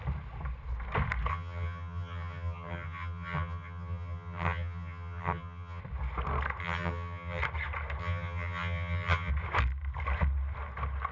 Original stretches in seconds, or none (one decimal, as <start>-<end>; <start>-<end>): 0.0-1.3; 5.8-6.6; 7.4-8.0; 9.3-11.1